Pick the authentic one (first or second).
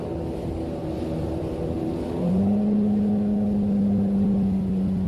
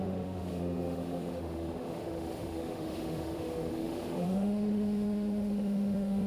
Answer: first